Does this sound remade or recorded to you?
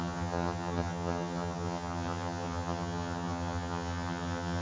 remade